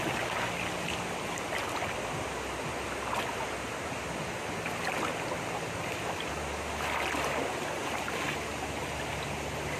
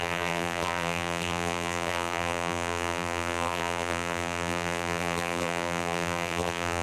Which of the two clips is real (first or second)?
first